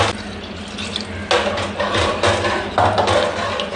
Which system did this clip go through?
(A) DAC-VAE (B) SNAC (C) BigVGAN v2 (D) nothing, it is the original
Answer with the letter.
D